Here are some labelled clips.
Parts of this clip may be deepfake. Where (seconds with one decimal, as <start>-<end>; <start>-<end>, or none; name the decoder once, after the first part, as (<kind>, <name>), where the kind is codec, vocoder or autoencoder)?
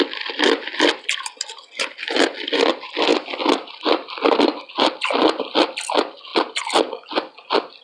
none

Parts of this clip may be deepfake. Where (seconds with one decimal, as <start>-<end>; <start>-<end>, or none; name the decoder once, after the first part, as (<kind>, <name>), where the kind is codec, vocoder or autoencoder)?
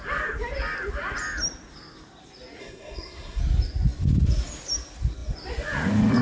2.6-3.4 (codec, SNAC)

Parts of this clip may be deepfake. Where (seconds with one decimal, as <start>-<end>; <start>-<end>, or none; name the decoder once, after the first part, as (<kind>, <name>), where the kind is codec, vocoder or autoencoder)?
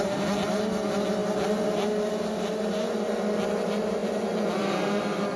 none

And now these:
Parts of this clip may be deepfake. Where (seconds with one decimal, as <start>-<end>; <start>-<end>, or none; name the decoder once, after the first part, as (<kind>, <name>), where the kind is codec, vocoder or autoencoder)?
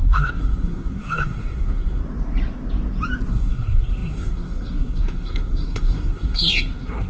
0.0-2.0 (codec, SNAC); 3.3-7.1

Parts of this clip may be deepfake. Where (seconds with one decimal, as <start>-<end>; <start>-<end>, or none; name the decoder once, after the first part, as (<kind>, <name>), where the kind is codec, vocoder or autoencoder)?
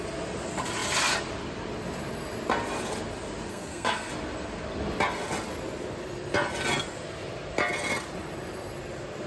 3.5-4.1 (codec, SNAC)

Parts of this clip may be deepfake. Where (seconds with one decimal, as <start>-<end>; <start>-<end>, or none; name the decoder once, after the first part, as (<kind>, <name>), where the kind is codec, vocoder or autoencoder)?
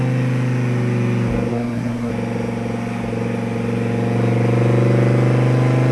1.5-2.1 (codec, SNAC)